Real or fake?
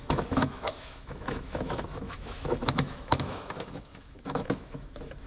fake